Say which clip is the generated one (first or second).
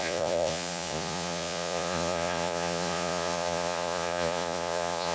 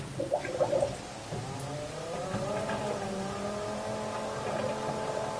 first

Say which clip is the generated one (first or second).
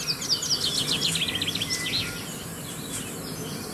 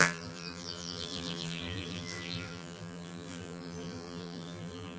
second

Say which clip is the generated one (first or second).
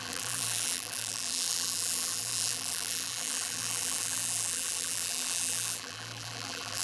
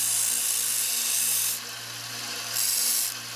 first